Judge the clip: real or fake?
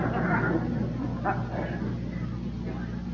real